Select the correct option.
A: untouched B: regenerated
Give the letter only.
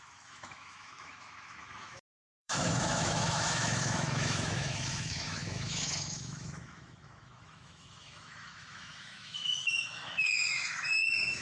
B